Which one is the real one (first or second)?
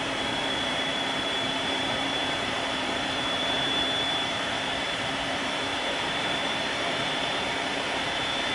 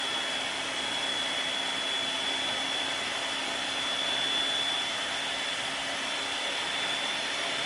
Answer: second